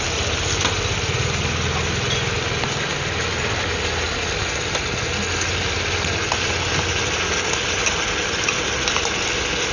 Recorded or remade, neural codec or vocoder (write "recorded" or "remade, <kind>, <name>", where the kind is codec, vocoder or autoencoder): recorded